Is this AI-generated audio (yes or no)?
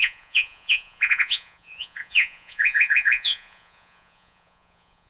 yes